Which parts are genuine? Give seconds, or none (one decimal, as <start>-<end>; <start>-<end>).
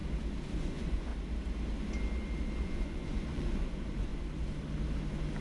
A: 0.0-0.5; 1.1-2.6; 4.1-5.4